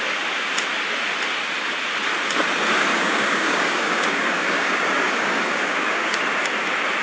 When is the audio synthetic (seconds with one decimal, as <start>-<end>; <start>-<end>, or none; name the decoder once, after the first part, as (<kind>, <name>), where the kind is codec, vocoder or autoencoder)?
2.9-6.2 (codec, DAC)

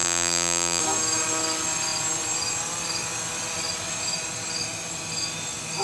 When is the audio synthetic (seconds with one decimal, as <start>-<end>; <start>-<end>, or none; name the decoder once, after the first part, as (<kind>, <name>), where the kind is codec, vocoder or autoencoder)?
0.0-0.8 (vocoder, BigVGAN v2)

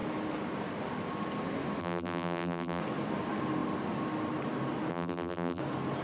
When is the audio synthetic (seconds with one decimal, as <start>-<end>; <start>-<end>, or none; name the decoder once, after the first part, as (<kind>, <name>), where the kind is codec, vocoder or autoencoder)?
1.8-2.8 (vocoder, BigVGAN v2); 4.9-5.6

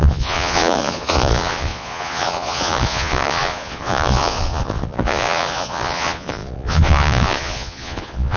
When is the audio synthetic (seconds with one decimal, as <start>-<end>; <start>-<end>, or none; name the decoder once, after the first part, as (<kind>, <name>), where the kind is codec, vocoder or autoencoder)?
0.0-8.4 (vocoder, Vocos)

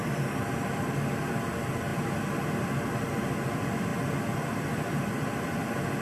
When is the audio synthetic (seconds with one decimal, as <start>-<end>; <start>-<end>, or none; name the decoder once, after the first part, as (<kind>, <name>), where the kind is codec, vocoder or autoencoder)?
1.3-1.9 (vocoder, BigVGAN v2); 2.5-6.0